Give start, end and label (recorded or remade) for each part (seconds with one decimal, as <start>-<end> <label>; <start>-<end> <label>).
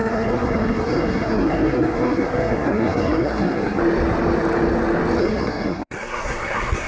0.0-3.8 remade; 3.8-5.2 recorded; 5.2-6.9 remade